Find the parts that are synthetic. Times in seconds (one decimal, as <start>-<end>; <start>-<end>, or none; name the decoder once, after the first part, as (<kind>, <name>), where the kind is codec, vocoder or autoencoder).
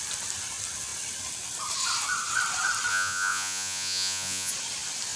2.9-4.5 (vocoder, Vocos)